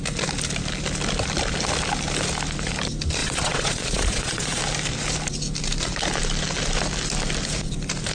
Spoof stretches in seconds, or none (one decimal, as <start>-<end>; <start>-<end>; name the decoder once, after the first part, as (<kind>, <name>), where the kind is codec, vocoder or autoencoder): 3.2-4.6 (vocoder, Vocos)